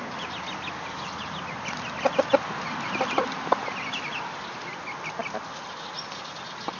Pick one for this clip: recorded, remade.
recorded